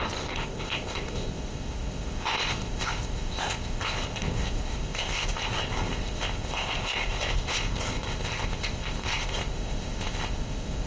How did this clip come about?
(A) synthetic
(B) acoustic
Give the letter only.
A